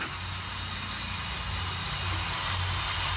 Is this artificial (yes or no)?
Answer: no